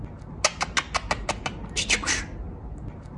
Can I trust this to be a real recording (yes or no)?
yes